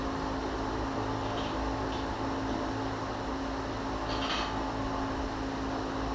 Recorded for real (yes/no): yes